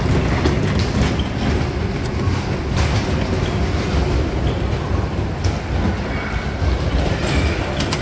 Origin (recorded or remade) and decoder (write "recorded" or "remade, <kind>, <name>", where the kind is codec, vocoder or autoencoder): recorded